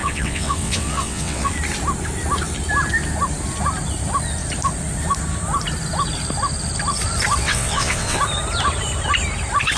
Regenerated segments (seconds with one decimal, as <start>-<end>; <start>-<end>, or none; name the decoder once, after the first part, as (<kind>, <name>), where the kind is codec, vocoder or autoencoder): 0.0-1.5 (vocoder, WaveNeXt); 7.4-8.2